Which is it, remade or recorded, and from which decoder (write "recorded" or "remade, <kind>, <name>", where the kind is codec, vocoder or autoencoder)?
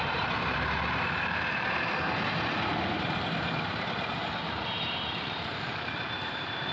remade, vocoder, BigVGAN v2